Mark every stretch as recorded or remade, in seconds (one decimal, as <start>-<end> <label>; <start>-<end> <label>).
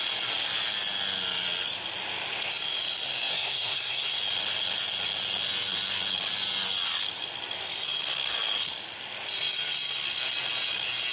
0.0-3.3 recorded; 3.3-4.2 remade; 4.2-11.1 recorded